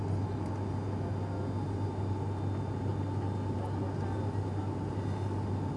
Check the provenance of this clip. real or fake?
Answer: real